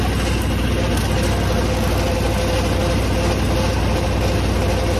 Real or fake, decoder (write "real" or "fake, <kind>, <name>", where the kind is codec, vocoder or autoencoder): real